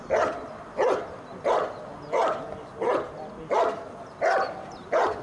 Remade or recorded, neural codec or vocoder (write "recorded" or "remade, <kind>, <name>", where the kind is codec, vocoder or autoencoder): recorded